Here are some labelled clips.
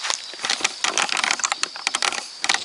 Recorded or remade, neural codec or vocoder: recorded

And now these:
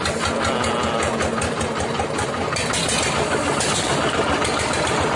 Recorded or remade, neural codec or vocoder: recorded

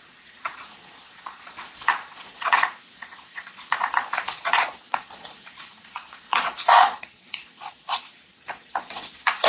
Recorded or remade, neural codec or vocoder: remade, vocoder, Vocos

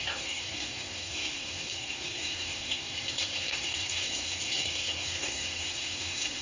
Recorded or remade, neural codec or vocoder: remade, codec, SNAC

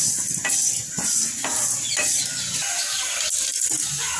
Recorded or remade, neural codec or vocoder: recorded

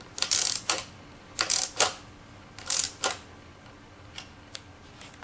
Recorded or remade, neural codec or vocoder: recorded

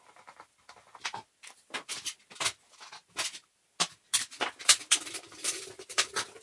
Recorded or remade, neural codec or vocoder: recorded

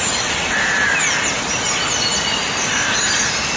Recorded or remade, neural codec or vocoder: recorded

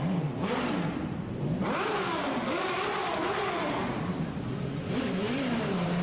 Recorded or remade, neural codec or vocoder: remade, vocoder, BigVGAN v2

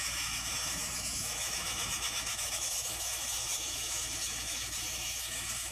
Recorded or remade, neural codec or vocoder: remade, autoencoder, DAC-VAE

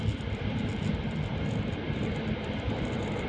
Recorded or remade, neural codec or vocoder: remade, vocoder, BigVGAN v2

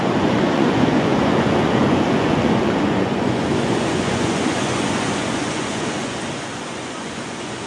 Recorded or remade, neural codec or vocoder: remade, vocoder, Vocos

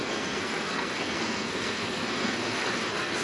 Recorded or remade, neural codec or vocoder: remade, codec, SNAC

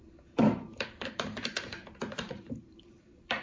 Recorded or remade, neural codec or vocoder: remade, vocoder, BigVGAN v2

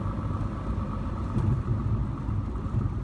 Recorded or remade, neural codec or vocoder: recorded